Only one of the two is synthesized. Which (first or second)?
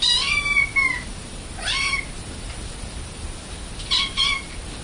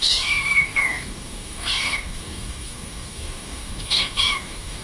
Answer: second